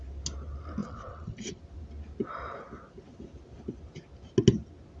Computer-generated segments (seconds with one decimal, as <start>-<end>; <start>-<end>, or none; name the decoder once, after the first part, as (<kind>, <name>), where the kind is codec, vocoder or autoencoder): 0.8-1.6 (vocoder, WaveNeXt)